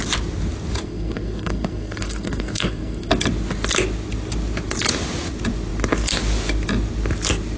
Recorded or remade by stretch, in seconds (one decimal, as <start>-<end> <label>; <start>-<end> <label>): 0.0-0.8 recorded; 0.8-3.1 remade; 3.1-7.6 recorded